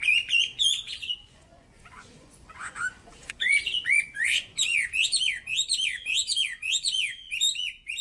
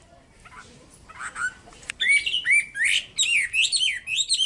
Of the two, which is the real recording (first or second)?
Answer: second